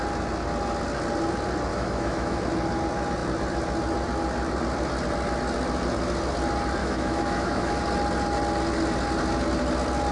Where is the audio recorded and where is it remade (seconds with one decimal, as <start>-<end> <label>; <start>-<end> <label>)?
0.0-1.7 recorded; 1.7-2.4 remade; 2.4-6.8 recorded; 6.8-7.7 remade; 7.7-10.1 recorded